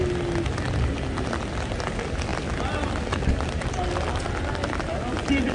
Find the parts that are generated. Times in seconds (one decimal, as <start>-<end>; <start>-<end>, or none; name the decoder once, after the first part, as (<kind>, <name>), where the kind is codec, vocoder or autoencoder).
none